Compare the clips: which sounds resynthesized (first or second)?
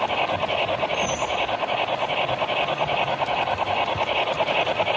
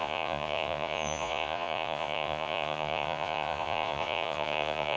second